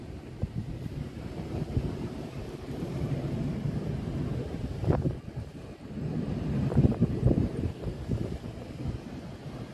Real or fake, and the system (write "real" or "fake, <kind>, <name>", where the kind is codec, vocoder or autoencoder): fake, vocoder, BigVGAN v2